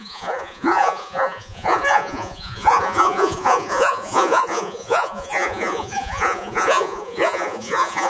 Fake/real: fake